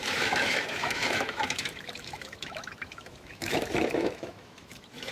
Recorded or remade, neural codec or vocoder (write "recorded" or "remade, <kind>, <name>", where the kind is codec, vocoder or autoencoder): remade, autoencoder, DAC-VAE